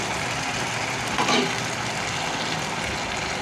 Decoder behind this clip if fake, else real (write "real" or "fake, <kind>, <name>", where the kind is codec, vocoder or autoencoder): real